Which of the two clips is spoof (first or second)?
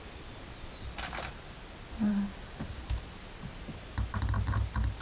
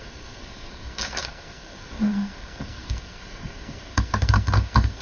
second